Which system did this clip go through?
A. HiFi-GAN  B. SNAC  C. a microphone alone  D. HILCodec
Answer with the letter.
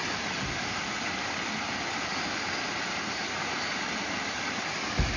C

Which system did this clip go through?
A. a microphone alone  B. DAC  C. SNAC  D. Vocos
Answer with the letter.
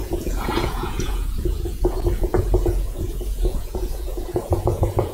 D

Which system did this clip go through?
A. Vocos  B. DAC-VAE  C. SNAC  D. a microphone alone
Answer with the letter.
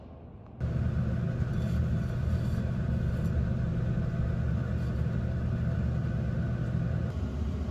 D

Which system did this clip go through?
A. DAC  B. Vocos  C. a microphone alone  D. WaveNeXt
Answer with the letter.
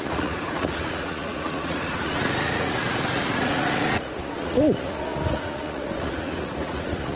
B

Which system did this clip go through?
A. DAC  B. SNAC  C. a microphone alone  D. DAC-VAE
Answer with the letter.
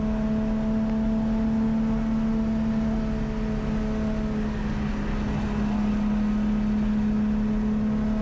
C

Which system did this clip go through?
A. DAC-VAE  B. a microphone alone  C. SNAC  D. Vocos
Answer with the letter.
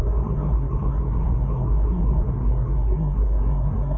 C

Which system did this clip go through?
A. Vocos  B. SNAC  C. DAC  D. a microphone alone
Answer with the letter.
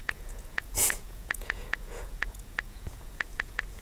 A